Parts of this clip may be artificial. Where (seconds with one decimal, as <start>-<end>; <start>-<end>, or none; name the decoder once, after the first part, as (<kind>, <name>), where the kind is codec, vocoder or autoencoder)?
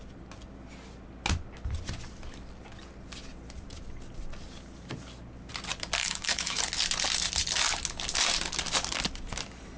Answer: 6.0-6.6 (autoencoder, DAC-VAE)